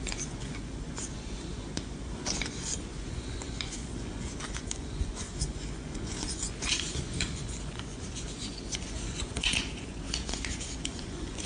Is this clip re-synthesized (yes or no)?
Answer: yes